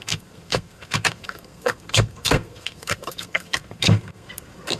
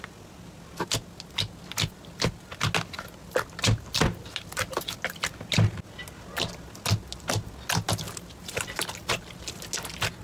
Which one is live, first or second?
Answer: second